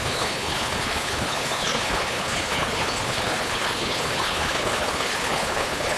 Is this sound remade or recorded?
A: remade